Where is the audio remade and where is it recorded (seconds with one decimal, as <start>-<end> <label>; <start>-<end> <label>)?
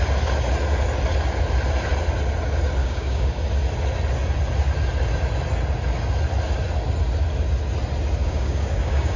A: 0.0-2.8 recorded; 2.8-3.4 remade; 3.4-8.2 recorded; 8.2-9.2 remade